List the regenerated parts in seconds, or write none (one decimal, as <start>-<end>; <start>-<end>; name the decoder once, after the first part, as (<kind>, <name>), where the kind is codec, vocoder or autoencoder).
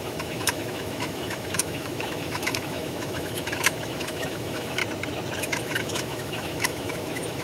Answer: 0.0-4.8 (autoencoder, DAC-VAE); 5.4-7.4